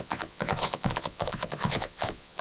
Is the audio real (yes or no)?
no